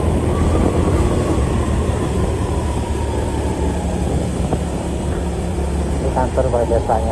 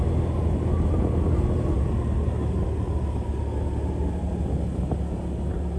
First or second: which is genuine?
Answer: second